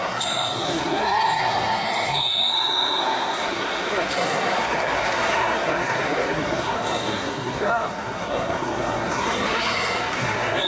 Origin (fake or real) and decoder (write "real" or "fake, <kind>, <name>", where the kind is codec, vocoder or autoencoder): fake, codec, SNAC